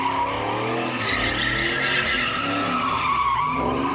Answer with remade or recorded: recorded